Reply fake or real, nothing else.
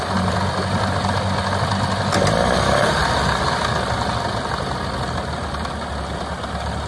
real